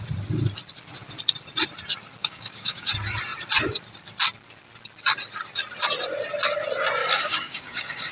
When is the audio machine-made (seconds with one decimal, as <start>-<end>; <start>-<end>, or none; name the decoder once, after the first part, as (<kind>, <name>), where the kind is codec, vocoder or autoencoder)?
2.2-2.9 (codec, DAC); 7.0-8.1